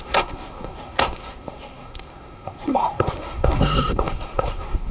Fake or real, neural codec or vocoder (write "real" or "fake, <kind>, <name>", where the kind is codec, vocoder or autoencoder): fake, codec, SNAC